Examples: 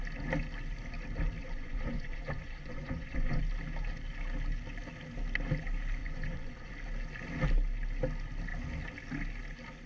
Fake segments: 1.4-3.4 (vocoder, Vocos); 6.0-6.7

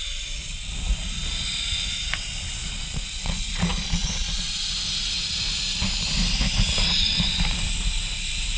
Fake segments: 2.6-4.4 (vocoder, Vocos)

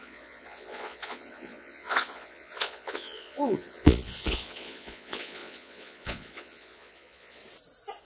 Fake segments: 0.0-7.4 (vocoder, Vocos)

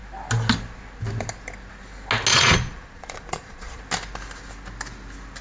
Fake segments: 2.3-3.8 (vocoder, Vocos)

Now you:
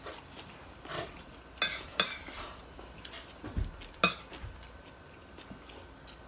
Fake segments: none